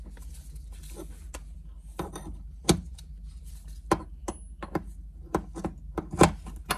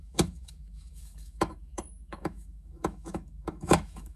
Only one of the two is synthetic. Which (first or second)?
second